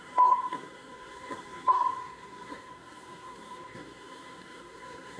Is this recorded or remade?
remade